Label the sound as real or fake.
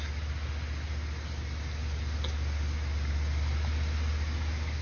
real